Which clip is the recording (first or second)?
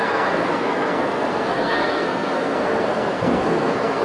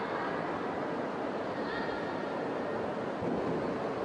second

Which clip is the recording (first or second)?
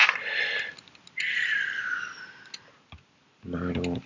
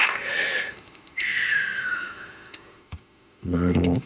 first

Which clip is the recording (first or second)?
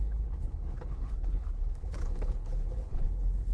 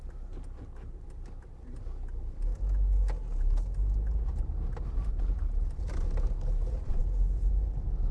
second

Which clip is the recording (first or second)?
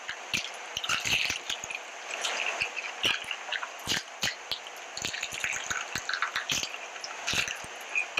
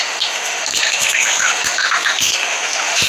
first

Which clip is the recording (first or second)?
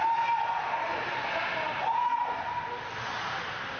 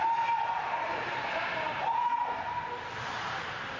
first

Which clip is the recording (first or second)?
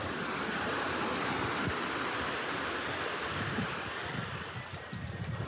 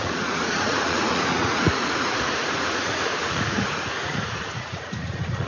first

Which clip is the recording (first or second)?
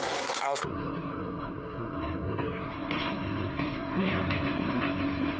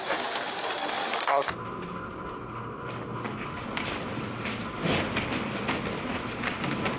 second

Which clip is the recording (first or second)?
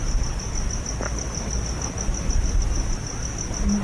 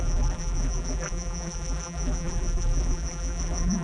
first